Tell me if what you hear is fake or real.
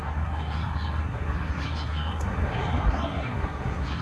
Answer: fake